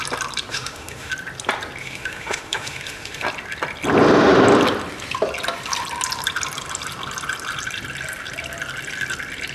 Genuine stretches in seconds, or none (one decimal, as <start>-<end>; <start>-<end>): 0.0-0.5; 1.1-1.8; 3.2-9.5